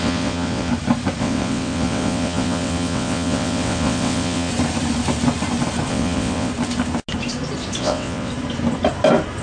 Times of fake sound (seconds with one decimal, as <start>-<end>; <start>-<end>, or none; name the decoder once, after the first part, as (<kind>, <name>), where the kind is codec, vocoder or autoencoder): 0.0-0.7 (vocoder, WaveNeXt); 1.2-4.5; 5.9-6.5; 7.8-8.3